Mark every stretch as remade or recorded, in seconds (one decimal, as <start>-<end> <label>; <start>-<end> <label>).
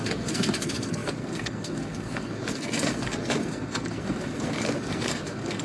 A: 0.0-5.6 remade